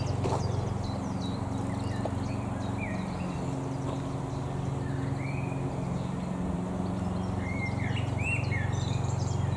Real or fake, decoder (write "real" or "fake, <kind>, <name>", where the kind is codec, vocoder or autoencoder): fake, vocoder, BigVGAN v2